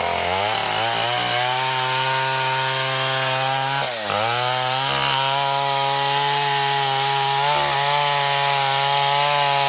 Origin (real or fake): real